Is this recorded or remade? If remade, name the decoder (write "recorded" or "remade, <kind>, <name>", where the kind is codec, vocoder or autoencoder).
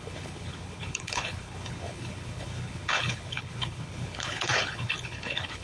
remade, codec, HILCodec